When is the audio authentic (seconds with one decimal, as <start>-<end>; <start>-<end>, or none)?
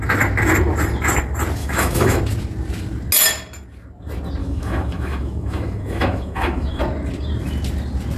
0.0-1.6; 2.2-4.4; 6.8-8.2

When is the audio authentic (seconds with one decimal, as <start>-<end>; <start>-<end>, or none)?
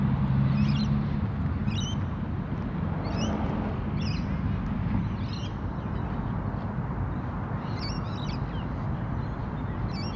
0.0-10.2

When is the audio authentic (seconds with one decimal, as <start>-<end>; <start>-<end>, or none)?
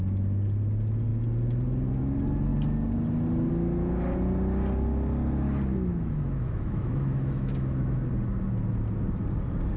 0.0-5.9; 8.1-9.8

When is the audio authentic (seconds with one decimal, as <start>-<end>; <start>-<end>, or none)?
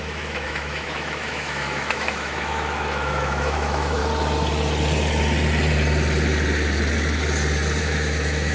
4.0-7.8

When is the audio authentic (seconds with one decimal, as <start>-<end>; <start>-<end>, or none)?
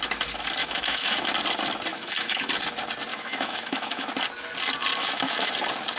0.0-0.6; 1.3-1.9; 2.5-3.1; 4.1-5.0; 5.5-6.0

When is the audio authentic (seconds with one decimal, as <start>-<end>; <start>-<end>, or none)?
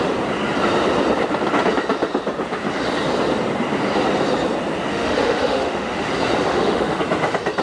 0.0-4.9; 6.1-6.5; 7.0-7.6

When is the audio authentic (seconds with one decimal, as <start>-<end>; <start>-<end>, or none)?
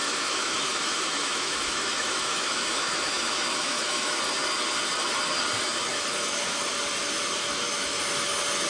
4.2-5.9; 6.7-7.4; 8.0-8.7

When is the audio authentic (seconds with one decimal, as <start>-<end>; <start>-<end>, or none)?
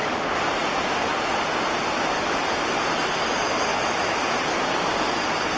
0.0-3.7; 4.2-5.6